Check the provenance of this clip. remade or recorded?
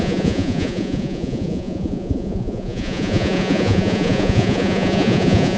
remade